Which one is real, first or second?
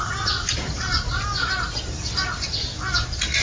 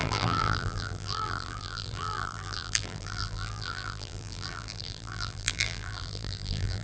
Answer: first